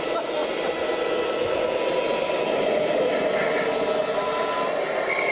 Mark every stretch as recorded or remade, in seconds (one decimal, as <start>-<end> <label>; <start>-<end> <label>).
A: 0.0-5.3 recorded